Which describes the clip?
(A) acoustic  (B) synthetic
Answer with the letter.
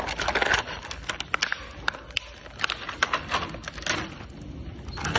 A